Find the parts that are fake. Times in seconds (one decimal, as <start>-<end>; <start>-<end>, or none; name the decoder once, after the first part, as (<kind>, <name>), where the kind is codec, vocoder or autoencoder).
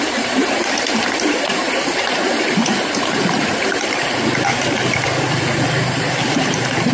1.5-3.7 (vocoder, BigVGAN v2)